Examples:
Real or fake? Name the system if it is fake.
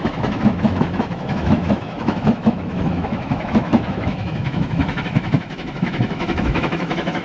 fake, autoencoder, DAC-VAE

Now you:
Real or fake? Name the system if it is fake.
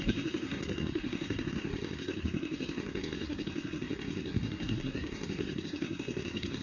fake, codec, SNAC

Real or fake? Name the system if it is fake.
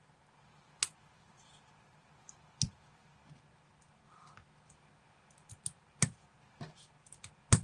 real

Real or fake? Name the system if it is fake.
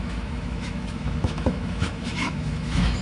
fake, autoencoder, DAC-VAE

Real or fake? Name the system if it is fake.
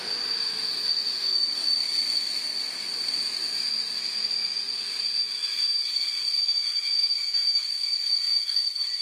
fake, autoencoder, DAC-VAE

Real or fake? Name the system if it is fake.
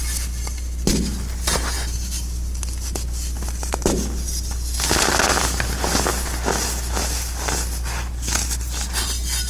real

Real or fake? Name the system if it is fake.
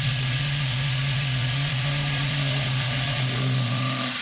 fake, vocoder, Vocos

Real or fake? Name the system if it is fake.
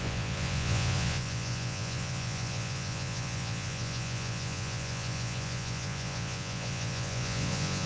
fake, vocoder, Vocos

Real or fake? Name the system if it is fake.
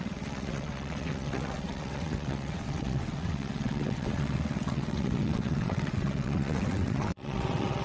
fake, vocoder, WaveNeXt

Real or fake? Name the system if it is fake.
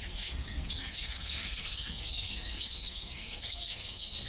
fake, codec, SNAC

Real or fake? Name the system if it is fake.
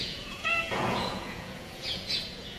fake, vocoder, Vocos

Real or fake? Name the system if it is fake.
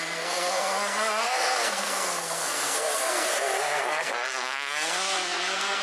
fake, codec, SNAC